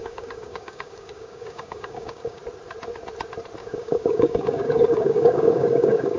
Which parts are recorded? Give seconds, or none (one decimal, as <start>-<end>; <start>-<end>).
2.4-3.6